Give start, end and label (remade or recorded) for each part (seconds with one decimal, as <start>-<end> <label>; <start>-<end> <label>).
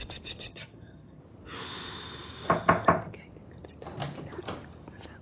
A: 0.0-0.5 recorded; 0.5-1.2 remade; 1.2-5.2 recorded